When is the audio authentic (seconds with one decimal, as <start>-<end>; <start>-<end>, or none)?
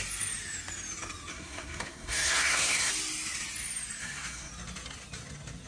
0.0-1.3; 2.9-4.0; 4.5-5.7